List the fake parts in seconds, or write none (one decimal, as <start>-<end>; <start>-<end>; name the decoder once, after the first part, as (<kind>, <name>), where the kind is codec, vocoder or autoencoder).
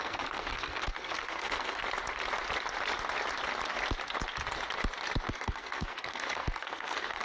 0.0-1.8 (codec, SNAC); 5.3-7.2